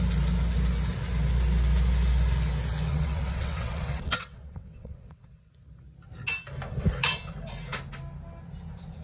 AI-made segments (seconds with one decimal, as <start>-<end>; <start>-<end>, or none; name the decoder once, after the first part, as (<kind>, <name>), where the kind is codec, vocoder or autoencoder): 2.9-5.5 (vocoder, WaveNeXt)